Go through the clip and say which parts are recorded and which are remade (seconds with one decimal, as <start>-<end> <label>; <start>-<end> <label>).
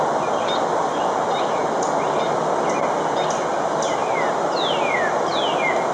0.0-0.9 recorded; 0.9-1.6 remade; 1.6-5.9 recorded